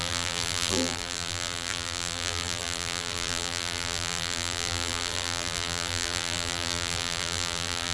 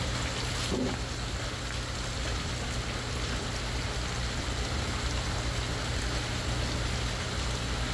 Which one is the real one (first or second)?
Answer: second